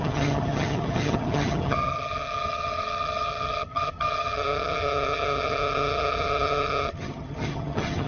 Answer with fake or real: fake